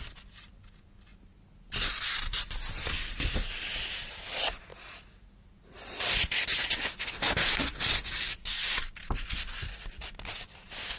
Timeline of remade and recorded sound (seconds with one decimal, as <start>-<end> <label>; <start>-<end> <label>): 0.0-11.0 recorded